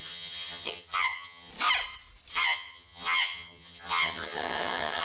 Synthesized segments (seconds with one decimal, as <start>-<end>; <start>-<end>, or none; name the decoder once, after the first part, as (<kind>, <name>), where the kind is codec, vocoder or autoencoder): 0.0-1.5 (vocoder, HiFi-GAN); 2.3-5.0